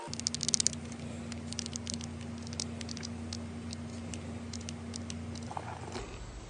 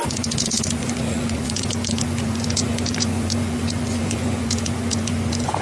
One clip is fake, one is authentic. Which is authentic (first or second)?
first